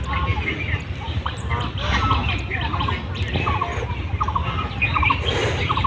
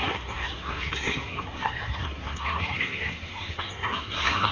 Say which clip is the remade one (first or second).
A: second